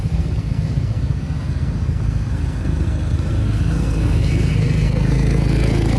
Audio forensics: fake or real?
fake